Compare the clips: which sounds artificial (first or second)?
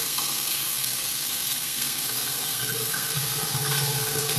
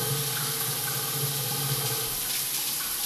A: first